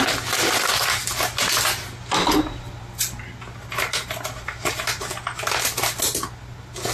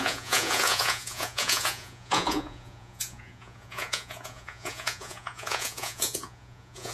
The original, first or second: first